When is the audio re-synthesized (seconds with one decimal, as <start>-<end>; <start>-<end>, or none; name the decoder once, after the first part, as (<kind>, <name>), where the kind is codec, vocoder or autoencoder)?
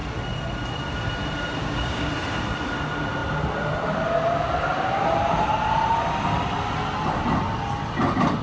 1.6-2.1 (codec, DAC)